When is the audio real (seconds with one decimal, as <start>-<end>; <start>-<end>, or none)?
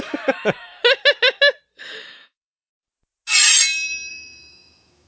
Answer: 0.8-2.1; 2.7-4.1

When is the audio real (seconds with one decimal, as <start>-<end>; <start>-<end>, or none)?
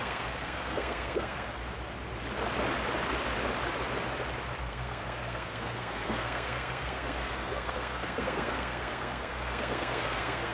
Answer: 1.6-4.6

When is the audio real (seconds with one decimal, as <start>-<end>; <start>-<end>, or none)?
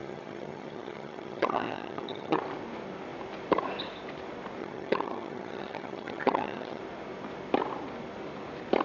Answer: 2.4-4.6; 6.8-8.8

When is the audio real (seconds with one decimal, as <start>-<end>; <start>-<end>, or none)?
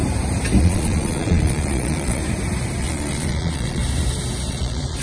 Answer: 0.0-0.6; 2.2-2.8; 3.8-4.5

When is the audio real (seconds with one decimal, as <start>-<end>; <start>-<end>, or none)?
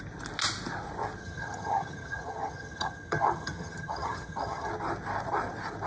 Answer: 0.0-1.2; 4.7-5.9